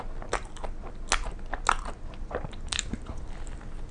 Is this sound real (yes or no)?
yes